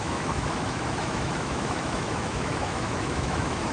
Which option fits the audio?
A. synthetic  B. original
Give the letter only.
A